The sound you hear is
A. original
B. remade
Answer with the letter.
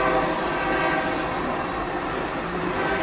A